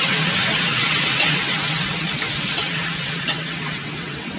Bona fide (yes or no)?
no